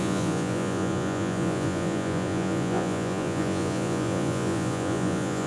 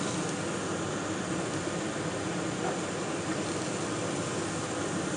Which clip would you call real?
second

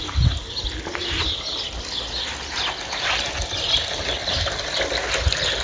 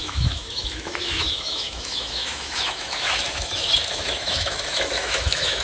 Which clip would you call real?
first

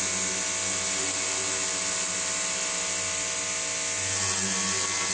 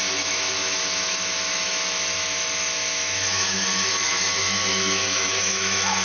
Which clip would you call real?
first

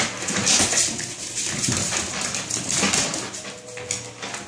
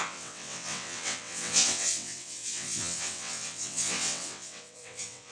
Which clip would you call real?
first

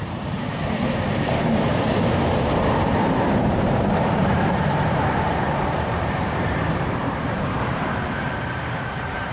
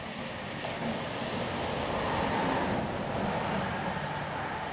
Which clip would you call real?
second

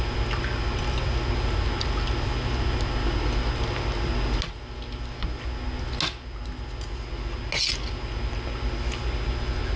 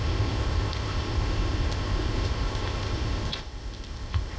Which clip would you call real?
first